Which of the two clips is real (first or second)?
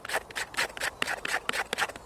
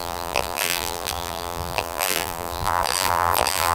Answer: first